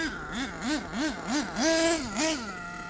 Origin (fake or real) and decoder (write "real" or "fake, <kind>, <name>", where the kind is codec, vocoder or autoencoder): real